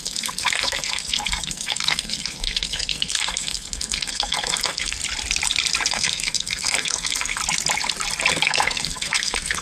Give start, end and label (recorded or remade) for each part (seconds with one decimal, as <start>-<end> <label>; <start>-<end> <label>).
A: 0.0-5.0 remade; 5.0-5.9 recorded; 5.9-7.4 remade; 7.4-8.3 recorded; 8.3-9.6 remade